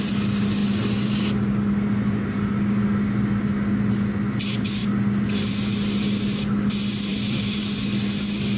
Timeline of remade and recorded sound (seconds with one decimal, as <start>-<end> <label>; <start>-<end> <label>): 0.0-0.6 recorded; 0.6-1.2 remade; 1.2-7.1 recorded; 7.1-7.6 remade; 7.6-8.6 recorded